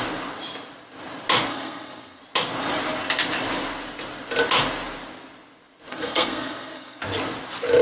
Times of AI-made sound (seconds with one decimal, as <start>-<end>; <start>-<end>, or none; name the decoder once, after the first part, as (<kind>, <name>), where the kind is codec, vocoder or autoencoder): 1.5-2.2 (codec, SNAC); 5.9-7.0